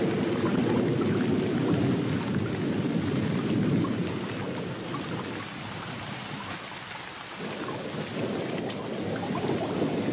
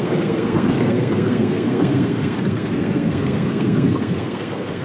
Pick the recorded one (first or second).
first